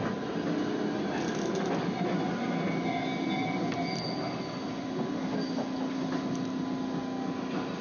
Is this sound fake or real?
real